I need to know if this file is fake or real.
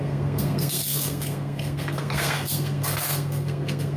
fake